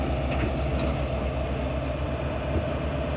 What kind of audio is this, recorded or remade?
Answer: recorded